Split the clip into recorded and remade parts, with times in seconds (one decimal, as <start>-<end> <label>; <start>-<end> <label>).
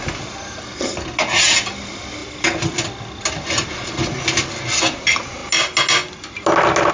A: 0.0-6.9 recorded